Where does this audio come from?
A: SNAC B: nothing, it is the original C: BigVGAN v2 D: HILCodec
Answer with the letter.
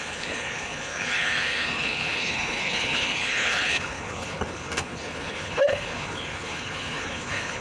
D